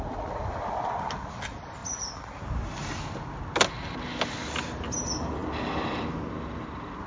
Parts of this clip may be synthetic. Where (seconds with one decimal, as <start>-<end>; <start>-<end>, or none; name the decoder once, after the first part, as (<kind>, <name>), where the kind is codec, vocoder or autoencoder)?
none